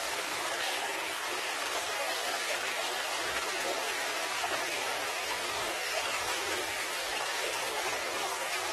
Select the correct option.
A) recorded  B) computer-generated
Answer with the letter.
B